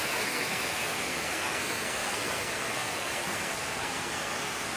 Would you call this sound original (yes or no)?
no